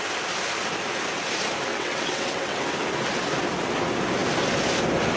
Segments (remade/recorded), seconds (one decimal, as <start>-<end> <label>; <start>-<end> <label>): 0.0-1.7 recorded; 1.7-2.6 remade; 2.6-5.2 recorded